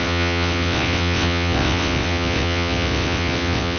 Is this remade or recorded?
remade